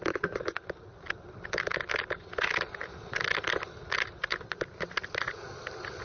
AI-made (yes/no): no